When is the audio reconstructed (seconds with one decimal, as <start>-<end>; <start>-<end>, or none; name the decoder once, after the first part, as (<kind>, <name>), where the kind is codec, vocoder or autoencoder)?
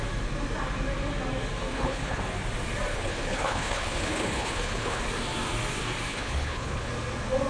1.7-2.2 (codec, HILCodec); 2.9-5.0; 6.1-6.9